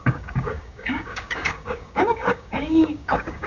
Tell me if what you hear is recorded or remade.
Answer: remade